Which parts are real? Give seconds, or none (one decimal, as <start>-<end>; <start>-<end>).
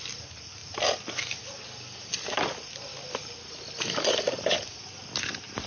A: 0.6-2.5; 2.9-4.5